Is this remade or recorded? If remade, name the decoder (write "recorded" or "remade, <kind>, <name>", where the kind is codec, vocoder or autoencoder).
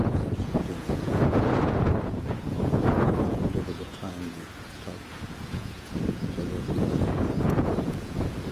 remade, vocoder, Vocos